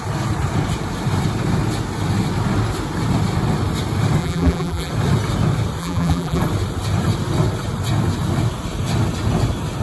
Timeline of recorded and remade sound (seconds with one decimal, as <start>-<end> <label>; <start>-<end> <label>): 0.0-4.2 recorded; 4.2-4.9 remade; 4.9-5.8 recorded; 5.8-6.4 remade; 6.4-9.8 recorded